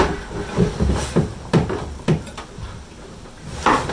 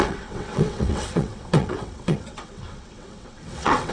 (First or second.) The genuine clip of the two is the first